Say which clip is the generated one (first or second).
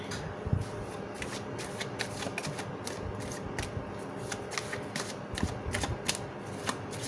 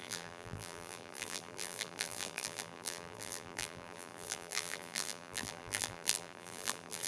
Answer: second